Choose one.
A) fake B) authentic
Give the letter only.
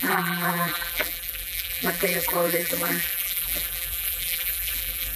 A